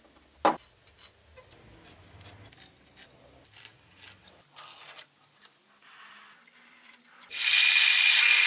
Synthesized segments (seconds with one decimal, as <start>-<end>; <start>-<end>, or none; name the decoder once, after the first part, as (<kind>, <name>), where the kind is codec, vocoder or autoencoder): none